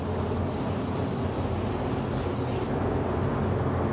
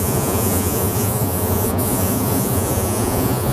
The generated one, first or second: second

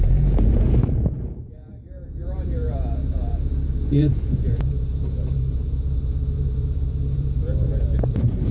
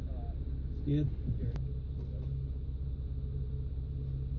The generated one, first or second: first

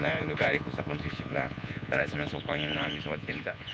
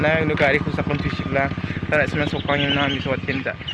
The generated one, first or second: first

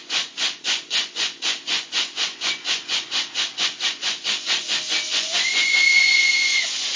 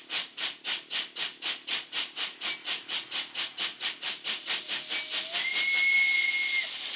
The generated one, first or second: first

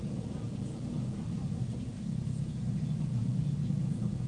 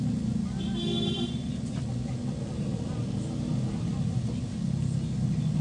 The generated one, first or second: first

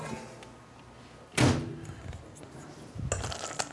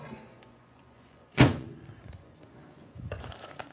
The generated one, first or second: second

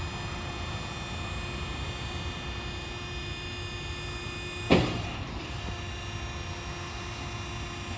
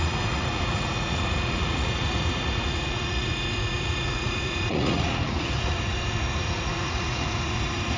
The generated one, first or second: second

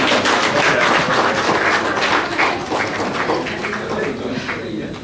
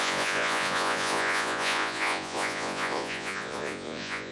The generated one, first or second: second